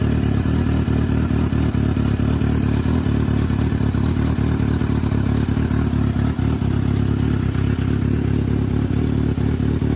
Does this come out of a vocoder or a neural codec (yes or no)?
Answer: no